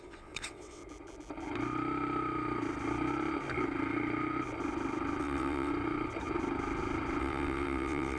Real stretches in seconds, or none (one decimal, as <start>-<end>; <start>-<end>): 0.8-5.2; 5.7-7.2